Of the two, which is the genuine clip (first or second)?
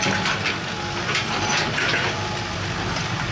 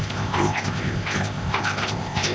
first